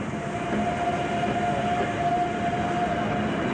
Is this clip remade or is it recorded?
recorded